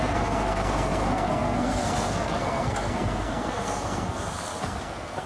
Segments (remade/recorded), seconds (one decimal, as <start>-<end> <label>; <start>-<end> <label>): 0.0-5.3 remade